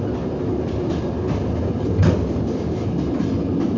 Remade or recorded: recorded